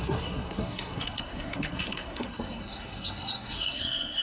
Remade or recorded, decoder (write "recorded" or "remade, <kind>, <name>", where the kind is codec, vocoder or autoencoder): remade, codec, SNAC